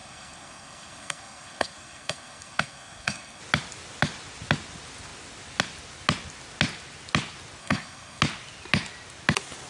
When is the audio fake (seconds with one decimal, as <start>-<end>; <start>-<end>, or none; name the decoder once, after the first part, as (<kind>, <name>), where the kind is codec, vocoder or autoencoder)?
0.0-3.4 (codec, SNAC); 7.6-8.2